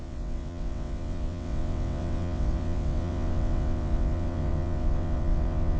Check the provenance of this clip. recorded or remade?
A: remade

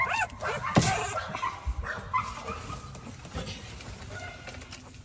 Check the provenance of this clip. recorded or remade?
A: recorded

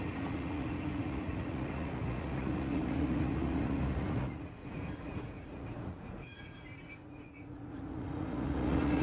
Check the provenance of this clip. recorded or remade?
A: remade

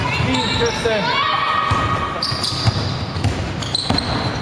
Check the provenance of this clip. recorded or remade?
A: recorded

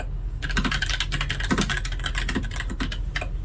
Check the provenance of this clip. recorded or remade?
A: recorded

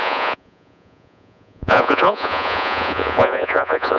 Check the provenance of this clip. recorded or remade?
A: remade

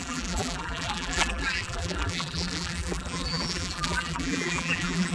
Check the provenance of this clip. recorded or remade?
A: remade